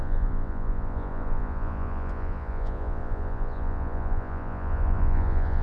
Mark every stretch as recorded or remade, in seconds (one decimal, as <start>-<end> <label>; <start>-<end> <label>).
0.0-5.6 remade